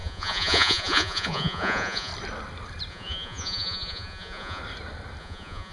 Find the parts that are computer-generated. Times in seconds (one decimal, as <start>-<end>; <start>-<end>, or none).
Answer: 0.0-2.1; 2.9-4.6; 5.2-5.7